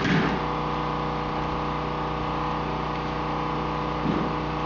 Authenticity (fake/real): real